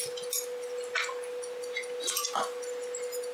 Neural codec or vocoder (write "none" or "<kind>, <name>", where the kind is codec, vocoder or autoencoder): none